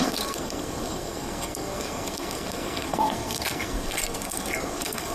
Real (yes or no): no